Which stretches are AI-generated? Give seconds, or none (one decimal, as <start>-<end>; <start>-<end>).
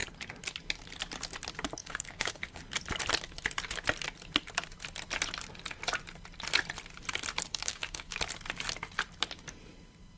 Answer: 1.8-2.6; 7.5-8.2